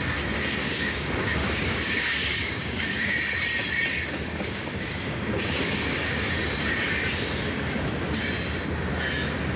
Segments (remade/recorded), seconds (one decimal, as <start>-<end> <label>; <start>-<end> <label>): 0.0-0.6 recorded; 0.6-3.1 remade; 3.1-3.9 recorded; 3.9-6.4 remade; 6.4-9.6 recorded